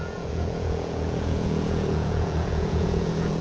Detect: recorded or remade remade